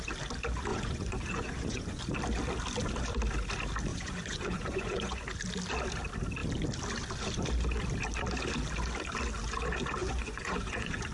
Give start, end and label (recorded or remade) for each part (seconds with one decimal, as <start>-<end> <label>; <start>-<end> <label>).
0.0-0.7 recorded; 0.7-2.0 remade; 2.0-3.9 recorded; 3.9-5.2 remade; 5.2-10.0 recorded; 10.0-11.1 remade